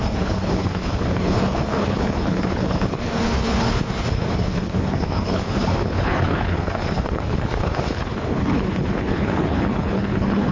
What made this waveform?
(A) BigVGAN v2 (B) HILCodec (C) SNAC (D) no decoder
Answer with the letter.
B